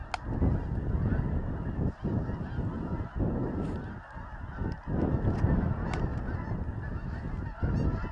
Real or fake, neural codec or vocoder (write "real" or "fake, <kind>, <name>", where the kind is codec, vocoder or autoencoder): real